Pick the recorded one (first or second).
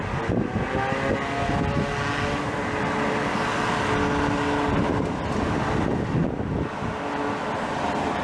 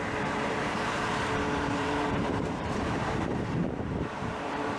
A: first